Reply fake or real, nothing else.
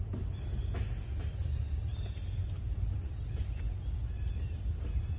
real